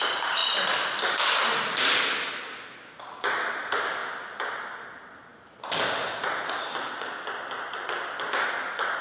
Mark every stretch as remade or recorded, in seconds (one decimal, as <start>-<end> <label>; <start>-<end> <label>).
0.0-9.0 recorded